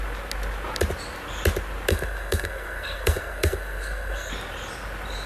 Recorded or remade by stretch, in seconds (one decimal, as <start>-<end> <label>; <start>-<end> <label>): 0.0-1.9 recorded; 1.9-4.3 remade; 4.3-5.3 recorded